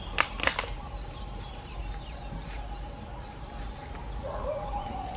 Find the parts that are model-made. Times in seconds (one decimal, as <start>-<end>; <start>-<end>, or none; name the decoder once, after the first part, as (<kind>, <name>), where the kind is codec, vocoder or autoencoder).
4.2-5.2 (vocoder, Vocos)